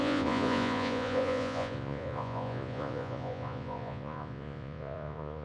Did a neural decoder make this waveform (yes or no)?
yes